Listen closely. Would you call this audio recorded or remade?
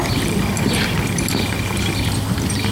recorded